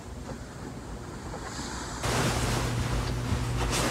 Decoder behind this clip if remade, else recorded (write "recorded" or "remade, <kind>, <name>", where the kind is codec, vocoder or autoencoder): recorded